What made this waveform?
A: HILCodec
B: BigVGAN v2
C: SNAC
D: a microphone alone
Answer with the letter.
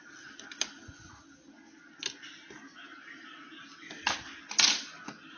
D